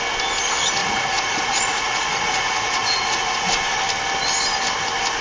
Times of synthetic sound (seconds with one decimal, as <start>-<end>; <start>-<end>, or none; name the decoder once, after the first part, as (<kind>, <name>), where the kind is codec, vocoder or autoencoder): 0.8-3.7 (vocoder, Vocos)